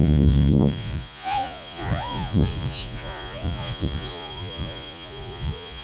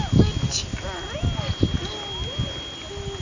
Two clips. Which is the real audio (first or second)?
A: second